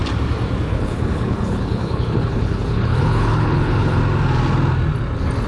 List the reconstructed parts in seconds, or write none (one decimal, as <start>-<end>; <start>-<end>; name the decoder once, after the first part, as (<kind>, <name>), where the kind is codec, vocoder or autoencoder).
0.7-4.0 (codec, HILCodec)